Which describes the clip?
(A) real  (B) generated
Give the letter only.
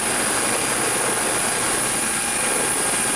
A